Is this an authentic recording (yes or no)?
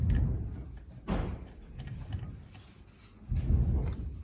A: yes